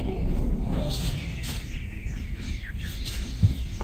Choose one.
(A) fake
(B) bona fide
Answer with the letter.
A